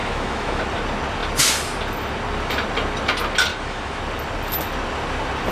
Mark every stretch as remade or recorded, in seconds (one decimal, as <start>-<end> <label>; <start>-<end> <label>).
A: 0.0-0.6 remade; 0.6-3.5 recorded; 3.5-4.0 remade; 4.0-5.5 recorded